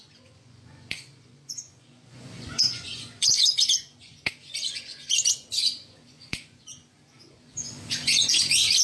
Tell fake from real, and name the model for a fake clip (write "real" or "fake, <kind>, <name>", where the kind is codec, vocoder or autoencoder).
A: fake, vocoder, Vocos